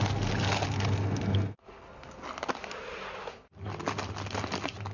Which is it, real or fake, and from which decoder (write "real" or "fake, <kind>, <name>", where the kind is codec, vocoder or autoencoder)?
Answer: real